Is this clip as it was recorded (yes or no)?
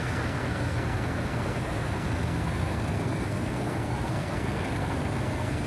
no